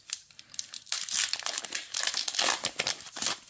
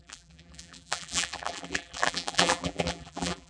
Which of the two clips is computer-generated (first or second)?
second